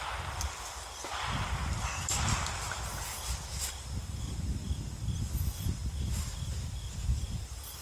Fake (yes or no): no